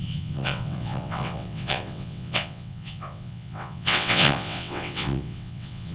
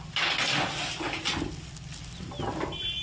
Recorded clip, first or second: second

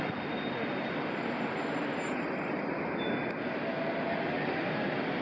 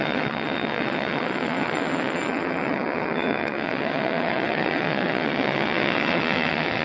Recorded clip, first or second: first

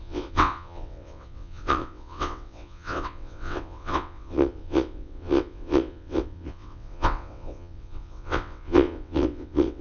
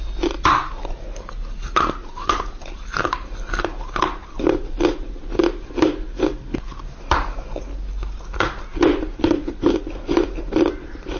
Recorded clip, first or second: second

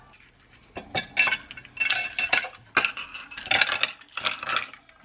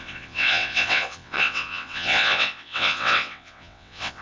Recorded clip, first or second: first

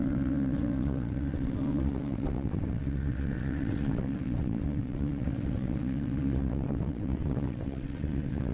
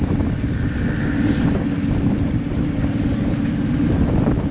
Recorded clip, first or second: second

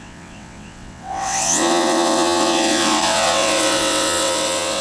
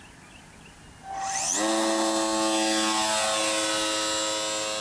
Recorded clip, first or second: second